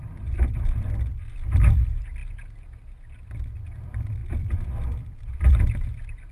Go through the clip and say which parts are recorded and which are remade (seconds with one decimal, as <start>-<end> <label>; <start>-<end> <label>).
0.0-2.2 remade; 2.2-3.8 recorded; 3.8-6.3 remade